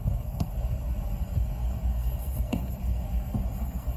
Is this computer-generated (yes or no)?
yes